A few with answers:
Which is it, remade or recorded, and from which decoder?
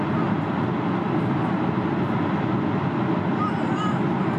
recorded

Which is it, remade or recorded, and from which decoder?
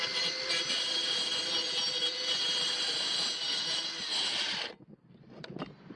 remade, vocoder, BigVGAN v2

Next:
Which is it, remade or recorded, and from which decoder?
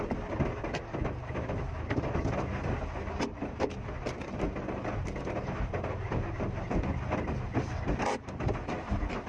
recorded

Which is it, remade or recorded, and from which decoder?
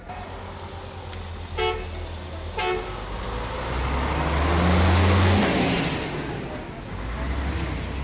recorded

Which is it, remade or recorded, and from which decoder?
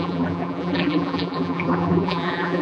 remade, vocoder, BigVGAN v2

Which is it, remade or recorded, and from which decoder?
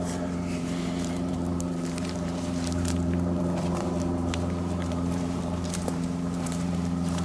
remade, vocoder, BigVGAN v2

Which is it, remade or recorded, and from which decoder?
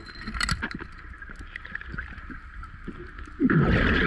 recorded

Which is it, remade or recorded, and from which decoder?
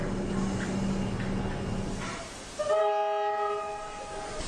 recorded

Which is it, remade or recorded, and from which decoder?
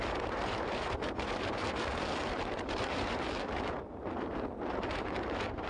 remade, vocoder, BigVGAN v2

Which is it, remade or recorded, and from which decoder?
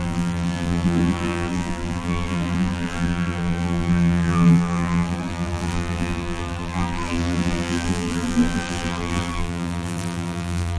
remade, vocoder, BigVGAN v2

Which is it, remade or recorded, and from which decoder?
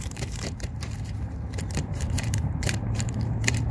remade, vocoder, BigVGAN v2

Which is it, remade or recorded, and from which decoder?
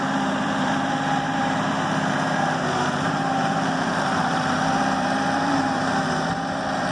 remade, vocoder, BigVGAN v2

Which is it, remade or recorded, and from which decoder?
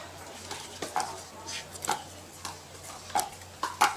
recorded